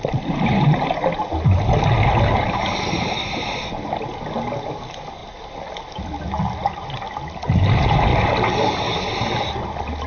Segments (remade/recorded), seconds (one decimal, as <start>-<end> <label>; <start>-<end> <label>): 0.0-5.2 recorded; 5.2-6.2 remade; 6.2-10.1 recorded